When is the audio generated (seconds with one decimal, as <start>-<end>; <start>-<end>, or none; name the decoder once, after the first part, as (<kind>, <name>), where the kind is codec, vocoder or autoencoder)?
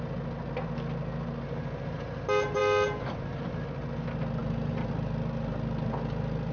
4.4-4.9 (vocoder, BigVGAN v2)